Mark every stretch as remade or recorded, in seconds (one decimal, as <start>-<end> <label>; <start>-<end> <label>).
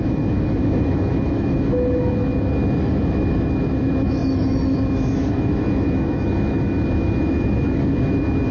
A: 0.0-8.5 remade